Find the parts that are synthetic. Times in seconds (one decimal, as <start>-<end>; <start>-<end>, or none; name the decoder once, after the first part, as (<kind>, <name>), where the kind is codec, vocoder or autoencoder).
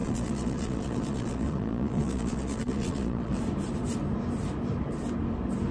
0.0-3.4 (vocoder, Vocos)